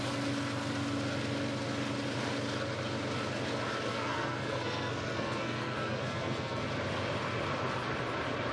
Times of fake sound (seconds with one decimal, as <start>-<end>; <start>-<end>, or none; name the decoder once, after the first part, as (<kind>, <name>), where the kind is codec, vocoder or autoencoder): 3.9-6.6 (codec, SNAC)